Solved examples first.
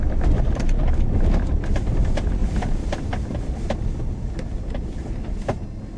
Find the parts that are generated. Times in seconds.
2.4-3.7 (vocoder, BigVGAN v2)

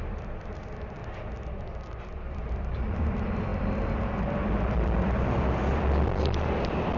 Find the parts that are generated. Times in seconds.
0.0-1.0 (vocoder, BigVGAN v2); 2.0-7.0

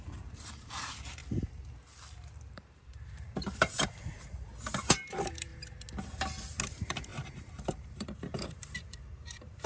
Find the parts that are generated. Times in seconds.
0.0-1.2 (vocoder, BigVGAN v2); 2.5-5.5; 6.6-9.7

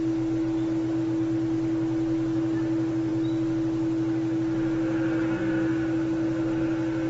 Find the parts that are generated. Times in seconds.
none